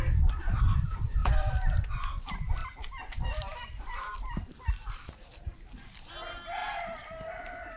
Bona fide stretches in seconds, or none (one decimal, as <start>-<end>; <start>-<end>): 0.0-1.2; 1.8-2.6; 6.1-7.8